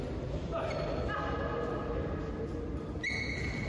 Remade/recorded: recorded